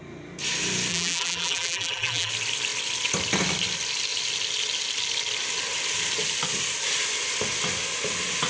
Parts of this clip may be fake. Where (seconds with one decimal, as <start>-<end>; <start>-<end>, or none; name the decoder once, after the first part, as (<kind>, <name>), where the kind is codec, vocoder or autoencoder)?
0.9-2.3 (vocoder, BigVGAN v2)